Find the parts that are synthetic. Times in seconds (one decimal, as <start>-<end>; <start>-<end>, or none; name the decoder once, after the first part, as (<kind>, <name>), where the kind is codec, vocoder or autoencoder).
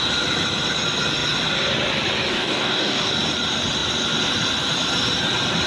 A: 2.3-3.1 (codec, DAC)